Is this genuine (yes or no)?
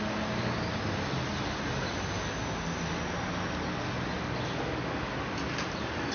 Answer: yes